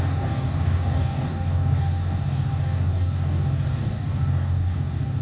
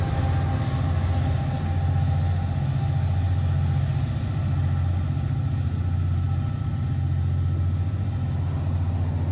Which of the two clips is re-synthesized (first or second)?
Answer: first